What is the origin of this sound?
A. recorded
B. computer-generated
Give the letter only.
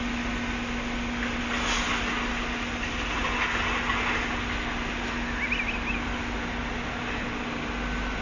A